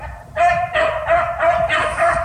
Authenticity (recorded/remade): recorded